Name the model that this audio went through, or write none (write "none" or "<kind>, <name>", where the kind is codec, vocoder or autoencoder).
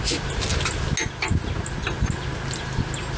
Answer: none